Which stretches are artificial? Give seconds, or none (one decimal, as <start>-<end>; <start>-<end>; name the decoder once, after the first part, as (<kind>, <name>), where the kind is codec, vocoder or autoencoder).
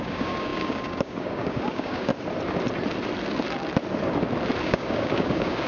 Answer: 0.0-2.1 (codec, DAC); 4.6-5.7